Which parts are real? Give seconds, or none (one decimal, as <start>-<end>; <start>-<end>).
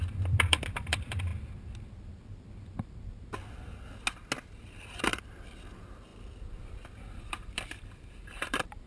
1.3-4.6